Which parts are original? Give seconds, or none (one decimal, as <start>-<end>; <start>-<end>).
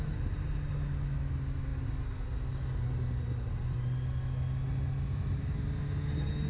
0.0-6.5